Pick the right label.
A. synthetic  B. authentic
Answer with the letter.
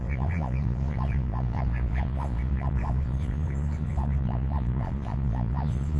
A